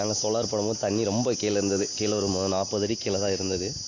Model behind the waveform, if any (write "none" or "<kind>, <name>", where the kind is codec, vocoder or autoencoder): none